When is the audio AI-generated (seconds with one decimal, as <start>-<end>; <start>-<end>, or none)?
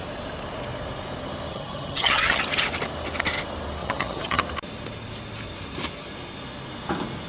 1.5-2.4; 3.8-4.4